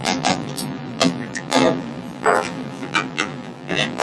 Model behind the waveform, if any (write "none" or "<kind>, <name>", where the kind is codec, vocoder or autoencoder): vocoder, BigVGAN v2